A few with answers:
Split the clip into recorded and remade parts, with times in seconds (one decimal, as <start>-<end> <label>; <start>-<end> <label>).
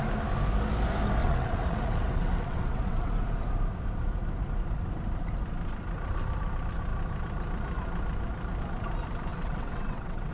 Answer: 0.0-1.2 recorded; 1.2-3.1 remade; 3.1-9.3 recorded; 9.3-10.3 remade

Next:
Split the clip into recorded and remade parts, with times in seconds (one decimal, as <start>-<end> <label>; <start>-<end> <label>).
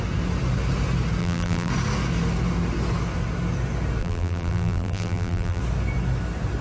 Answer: 0.0-1.2 recorded; 1.2-1.7 remade; 1.7-4.0 recorded; 4.0-5.6 remade; 5.6-6.6 recorded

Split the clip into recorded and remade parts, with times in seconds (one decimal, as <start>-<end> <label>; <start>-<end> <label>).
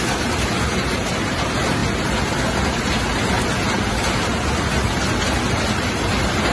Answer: 0.0-6.5 recorded